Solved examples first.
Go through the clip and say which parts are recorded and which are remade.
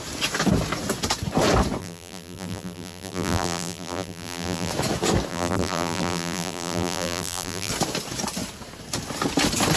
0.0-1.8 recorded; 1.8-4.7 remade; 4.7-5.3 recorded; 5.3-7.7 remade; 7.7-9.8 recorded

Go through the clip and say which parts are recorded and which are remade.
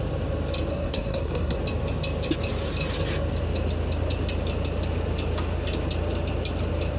0.0-0.7 recorded; 0.7-1.6 remade; 1.6-7.0 recorded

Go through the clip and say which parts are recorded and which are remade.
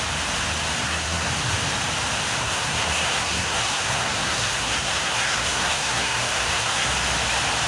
0.0-0.8 recorded; 0.8-1.3 remade; 1.3-2.4 recorded; 2.4-6.9 remade; 6.9-7.7 recorded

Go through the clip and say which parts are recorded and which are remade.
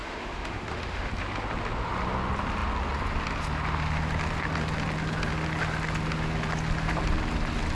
0.0-1.1 remade; 1.1-7.7 recorded